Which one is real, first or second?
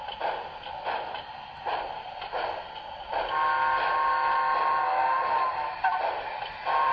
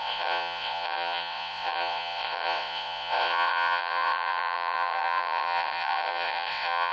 first